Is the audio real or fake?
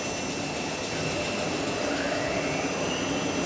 real